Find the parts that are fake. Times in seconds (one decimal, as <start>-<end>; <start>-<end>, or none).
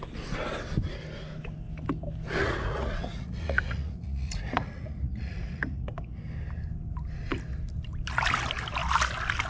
2.4-5.9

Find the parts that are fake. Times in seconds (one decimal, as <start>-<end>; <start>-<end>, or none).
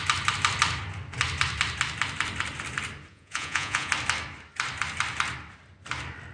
3.1-3.9